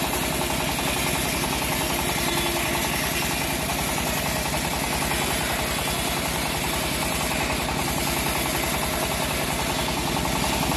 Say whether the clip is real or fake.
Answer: real